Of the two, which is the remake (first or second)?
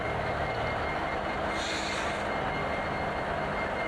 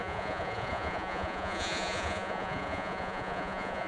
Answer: second